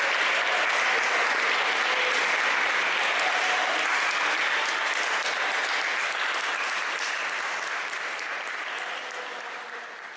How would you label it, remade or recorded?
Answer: recorded